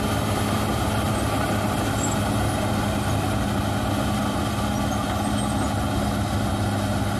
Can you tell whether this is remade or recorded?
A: recorded